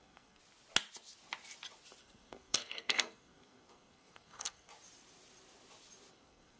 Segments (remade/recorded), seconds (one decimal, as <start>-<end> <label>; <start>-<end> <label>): 0.0-0.4 remade; 0.4-2.0 recorded; 2.0-4.7 remade; 4.7-6.1 recorded; 6.1-6.6 remade

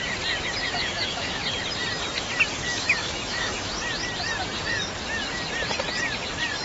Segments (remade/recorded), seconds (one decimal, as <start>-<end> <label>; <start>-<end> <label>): 0.0-0.8 recorded; 0.8-1.4 remade; 1.4-2.7 recorded; 2.7-3.7 remade; 3.7-6.6 recorded

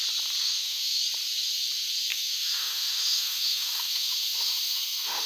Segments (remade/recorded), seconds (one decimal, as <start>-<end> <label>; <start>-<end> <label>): 0.0-0.4 recorded; 0.4-1.0 remade; 1.0-2.1 recorded; 2.1-5.3 remade

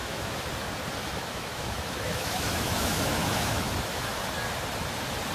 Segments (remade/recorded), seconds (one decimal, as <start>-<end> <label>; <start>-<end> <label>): 0.0-0.5 remade; 0.5-1.0 recorded; 1.0-4.2 remade; 4.2-5.3 recorded